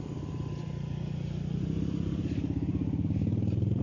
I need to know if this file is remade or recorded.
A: remade